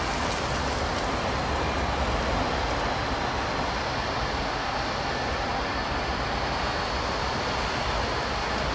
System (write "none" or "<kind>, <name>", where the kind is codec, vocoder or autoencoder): none